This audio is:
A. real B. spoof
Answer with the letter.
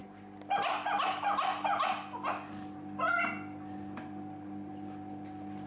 A